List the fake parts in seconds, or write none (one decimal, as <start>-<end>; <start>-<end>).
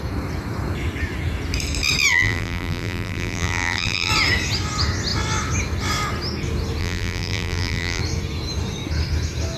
2.1-4.1; 6.8-8.0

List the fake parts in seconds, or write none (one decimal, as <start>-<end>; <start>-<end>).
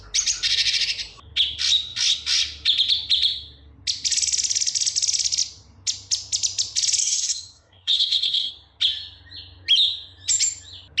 7.0-8.5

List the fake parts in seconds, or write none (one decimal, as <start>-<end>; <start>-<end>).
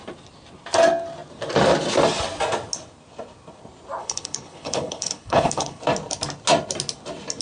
4.0-5.8